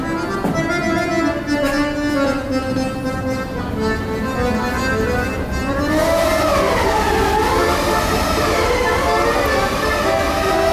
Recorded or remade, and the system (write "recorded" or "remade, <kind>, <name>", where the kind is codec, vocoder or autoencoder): recorded